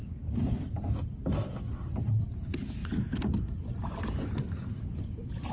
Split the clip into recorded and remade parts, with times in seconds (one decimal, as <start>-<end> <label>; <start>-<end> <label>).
0.0-2.8 recorded; 2.8-4.7 remade; 4.7-5.5 recorded